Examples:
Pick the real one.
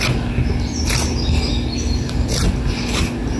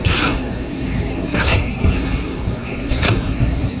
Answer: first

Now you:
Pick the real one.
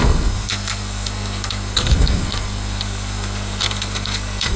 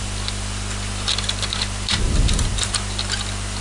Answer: second